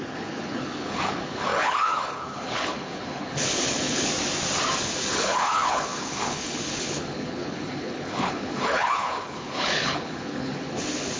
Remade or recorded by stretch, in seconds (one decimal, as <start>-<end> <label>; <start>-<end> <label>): 0.0-4.1 remade; 4.1-4.8 recorded; 4.8-11.2 remade